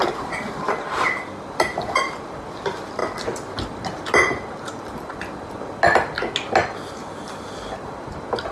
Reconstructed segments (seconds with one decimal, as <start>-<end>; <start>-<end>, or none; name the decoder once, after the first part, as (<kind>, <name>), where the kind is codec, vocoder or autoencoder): none